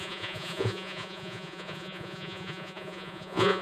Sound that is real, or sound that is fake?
fake